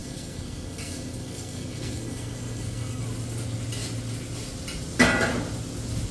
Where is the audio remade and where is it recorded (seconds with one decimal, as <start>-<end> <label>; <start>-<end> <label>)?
0.0-3.0 remade; 3.0-6.1 recorded